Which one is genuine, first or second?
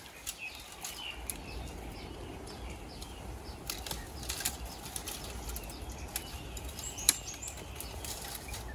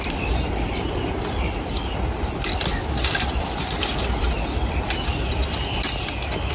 first